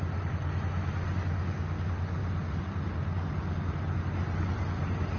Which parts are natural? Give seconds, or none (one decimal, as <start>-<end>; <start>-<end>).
0.0-5.2